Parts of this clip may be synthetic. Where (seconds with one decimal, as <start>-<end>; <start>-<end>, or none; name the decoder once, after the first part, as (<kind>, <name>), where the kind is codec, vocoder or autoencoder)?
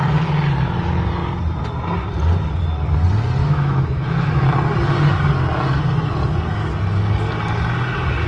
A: 3.4-4.5 (autoencoder, DAC-VAE)